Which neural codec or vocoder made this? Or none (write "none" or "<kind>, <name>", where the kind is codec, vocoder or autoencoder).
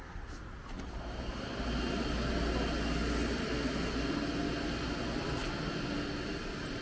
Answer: none